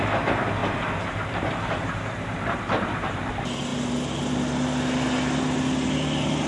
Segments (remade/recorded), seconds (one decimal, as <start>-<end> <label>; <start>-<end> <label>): 0.0-0.6 recorded; 0.6-3.3 remade; 3.3-6.5 recorded